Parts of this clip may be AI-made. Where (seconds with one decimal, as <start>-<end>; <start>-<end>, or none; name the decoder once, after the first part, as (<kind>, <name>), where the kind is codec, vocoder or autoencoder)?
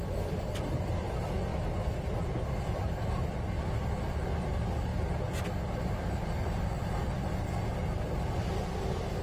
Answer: 1.5-3.6 (vocoder, BigVGAN v2)